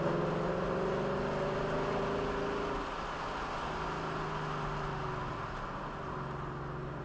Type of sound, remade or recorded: recorded